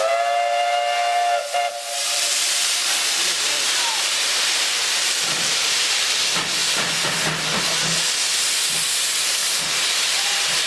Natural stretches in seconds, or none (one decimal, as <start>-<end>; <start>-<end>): 0.0-2.0; 6.1-9.4